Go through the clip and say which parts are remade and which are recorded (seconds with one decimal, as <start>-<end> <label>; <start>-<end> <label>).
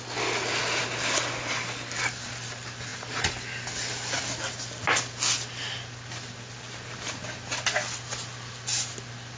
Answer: 0.0-9.4 recorded